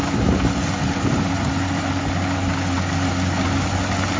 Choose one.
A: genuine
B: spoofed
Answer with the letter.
A